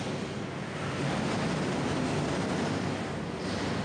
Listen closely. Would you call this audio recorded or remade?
recorded